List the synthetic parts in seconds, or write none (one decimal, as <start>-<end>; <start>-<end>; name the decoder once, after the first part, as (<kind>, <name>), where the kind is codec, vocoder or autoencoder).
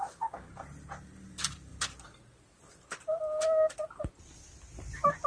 none